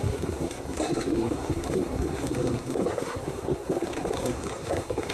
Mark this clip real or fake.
fake